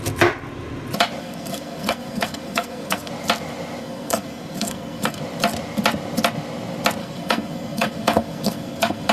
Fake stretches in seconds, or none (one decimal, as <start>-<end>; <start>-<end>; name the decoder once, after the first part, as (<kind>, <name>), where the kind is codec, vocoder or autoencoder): 1.2-3.1 (codec, SNAC); 3.8-5.2; 7.0-9.1